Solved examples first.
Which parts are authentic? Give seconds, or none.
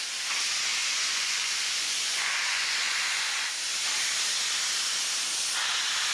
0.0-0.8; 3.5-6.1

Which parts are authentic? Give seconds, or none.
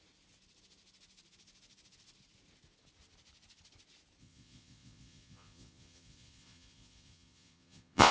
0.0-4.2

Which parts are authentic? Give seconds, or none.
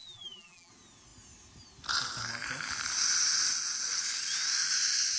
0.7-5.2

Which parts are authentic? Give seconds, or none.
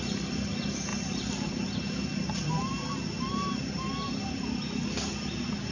0.0-5.7